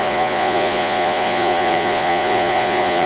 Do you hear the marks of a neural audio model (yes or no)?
yes